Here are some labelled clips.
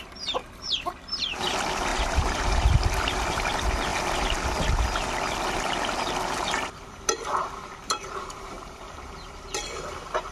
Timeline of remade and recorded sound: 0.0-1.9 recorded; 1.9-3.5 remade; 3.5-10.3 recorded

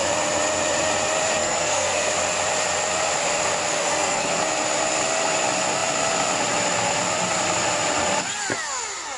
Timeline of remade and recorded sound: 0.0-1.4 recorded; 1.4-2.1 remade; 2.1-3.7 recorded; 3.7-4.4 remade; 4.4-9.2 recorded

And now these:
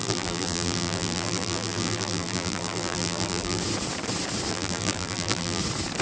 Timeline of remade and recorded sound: 0.0-3.6 remade; 3.6-4.5 recorded; 4.5-5.6 remade; 5.6-6.0 recorded

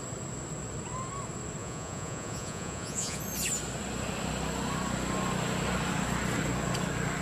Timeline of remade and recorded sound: 0.0-1.6 recorded; 1.6-3.2 remade; 3.2-7.2 recorded

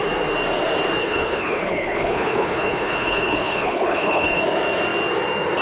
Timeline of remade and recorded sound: 0.0-1.0 recorded; 1.0-4.4 remade; 4.4-5.6 recorded

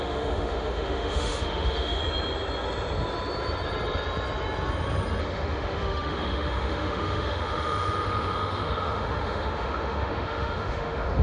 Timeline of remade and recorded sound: 0.0-2.0 remade; 2.0-5.2 recorded; 5.2-11.2 remade

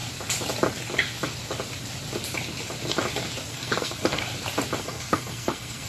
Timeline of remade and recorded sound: 0.0-3.5 recorded; 3.5-4.2 remade; 4.2-4.8 recorded; 4.8-5.9 remade

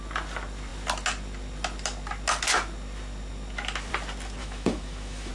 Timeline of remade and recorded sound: 0.0-4.4 recorded; 4.4-5.3 remade